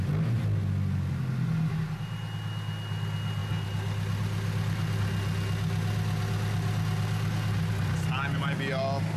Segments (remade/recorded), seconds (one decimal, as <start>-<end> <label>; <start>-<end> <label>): 0.0-9.2 recorded